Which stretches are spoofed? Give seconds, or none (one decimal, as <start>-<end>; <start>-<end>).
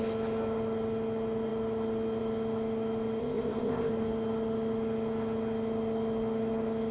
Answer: 3.2-3.9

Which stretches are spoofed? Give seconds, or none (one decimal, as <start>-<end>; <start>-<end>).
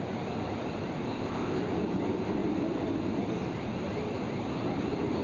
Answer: 1.1-1.6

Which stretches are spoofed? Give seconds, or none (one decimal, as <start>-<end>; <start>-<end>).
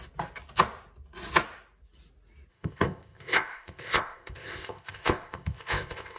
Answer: 2.5-6.2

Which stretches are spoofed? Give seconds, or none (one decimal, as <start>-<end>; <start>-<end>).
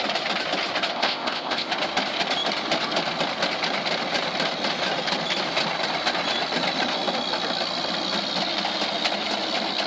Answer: 0.9-1.7